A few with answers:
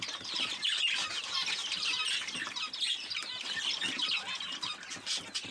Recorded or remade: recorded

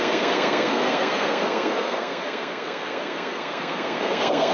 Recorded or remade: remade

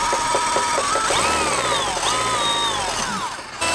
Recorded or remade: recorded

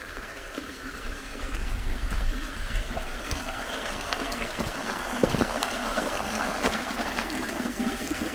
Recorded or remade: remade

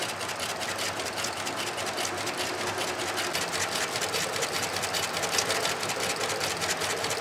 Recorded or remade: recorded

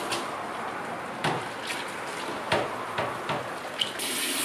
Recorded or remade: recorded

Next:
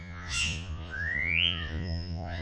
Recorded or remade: remade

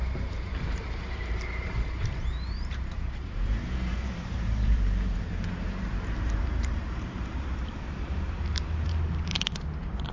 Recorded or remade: remade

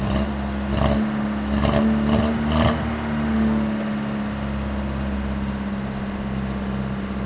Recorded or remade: recorded